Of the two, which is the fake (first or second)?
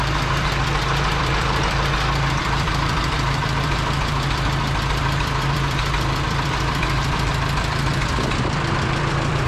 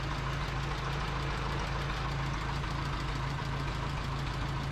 first